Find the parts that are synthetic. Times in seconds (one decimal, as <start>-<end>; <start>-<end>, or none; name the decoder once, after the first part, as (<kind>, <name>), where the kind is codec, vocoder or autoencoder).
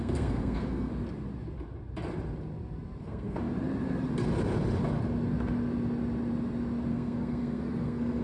0.0-0.9 (codec, SNAC); 3.0-3.4; 6.9-8.2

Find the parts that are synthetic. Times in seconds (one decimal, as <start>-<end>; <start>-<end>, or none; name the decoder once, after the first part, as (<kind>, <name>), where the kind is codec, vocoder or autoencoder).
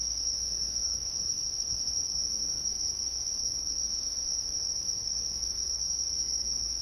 0.0-6.8 (codec, SNAC)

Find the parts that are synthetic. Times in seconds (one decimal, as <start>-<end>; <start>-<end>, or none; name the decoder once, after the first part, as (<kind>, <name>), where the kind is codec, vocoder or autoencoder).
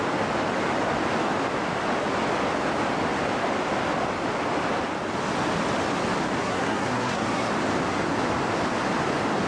6.4-7.5 (codec, SNAC)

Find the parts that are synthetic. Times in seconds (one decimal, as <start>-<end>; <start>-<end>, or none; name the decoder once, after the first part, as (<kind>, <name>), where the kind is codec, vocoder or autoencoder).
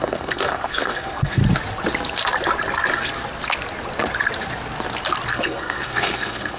0.0-1.4 (codec, SNAC); 5.3-6.6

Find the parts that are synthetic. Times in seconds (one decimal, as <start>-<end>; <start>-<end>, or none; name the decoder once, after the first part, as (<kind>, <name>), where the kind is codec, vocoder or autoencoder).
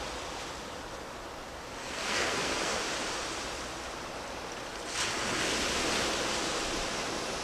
1.8-2.8 (codec, SNAC)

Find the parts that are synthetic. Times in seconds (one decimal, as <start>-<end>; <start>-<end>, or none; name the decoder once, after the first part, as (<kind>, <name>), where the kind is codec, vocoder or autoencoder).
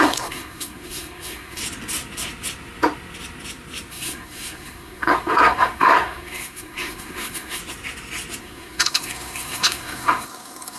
0.0-1.6 (codec, SNAC); 3.9-7.6; 8.4-10.8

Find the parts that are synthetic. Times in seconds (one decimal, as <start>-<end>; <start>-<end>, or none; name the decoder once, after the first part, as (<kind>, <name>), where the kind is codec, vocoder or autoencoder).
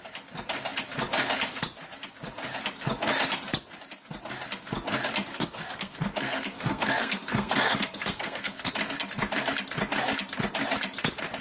5.3-8.7 (codec, SNAC)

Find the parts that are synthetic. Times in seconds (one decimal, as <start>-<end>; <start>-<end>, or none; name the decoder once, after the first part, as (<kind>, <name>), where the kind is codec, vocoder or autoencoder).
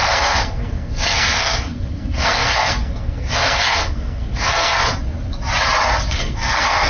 0.0-4.8 (codec, SNAC); 6.1-6.9